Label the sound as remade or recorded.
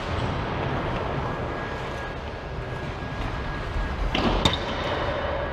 recorded